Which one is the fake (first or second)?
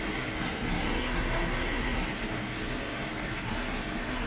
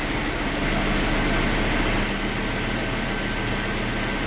first